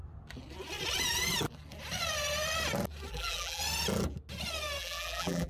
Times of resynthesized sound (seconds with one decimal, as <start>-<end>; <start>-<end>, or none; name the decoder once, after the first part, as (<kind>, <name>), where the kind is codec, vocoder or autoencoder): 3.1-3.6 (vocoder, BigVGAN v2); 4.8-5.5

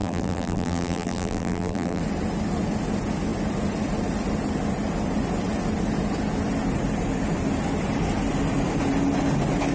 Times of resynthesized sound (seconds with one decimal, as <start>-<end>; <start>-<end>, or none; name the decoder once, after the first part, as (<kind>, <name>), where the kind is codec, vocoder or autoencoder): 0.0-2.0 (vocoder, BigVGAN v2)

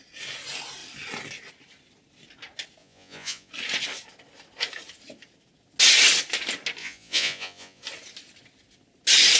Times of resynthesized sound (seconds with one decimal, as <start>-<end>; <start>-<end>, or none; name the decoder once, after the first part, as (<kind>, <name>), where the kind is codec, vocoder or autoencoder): 2.8-3.5 (vocoder, Vocos); 6.8-7.8

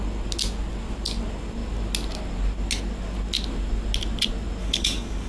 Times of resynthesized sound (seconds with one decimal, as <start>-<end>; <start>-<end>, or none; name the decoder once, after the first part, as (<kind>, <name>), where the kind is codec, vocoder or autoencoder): 4.6-5.3 (codec, DAC)

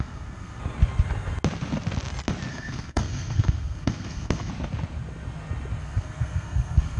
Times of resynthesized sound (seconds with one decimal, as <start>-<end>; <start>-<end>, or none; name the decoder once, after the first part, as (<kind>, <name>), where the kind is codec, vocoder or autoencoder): 0.0-0.6 (codec, SNAC); 2.5-4.5; 5.8-7.0

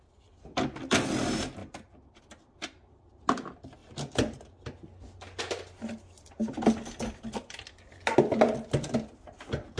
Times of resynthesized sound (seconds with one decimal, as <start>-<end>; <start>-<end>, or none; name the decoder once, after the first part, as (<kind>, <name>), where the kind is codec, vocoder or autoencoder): none

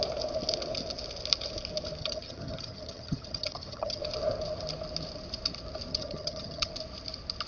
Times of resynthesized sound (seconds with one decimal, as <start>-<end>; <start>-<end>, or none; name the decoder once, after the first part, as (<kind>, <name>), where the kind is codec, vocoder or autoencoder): 2.0-4.0 (vocoder, HiFi-GAN); 5.9-6.7

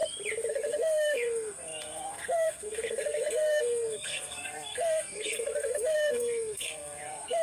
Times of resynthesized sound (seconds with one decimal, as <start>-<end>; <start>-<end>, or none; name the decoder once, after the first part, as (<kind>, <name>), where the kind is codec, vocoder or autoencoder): 0.5-7.4 (codec, SNAC)